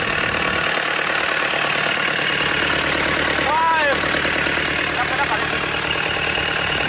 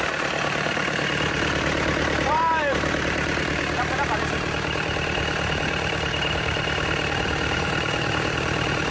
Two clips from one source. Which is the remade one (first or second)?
second